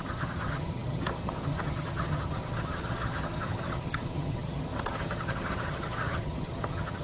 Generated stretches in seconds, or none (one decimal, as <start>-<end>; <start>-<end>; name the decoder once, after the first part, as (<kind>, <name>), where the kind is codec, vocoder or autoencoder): 0.0-7.0 (vocoder, HiFi-GAN)